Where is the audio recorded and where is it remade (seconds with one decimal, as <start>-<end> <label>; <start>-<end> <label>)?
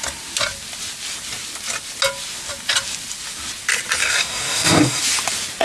0.0-4.0 recorded; 4.0-5.0 remade; 5.0-5.6 recorded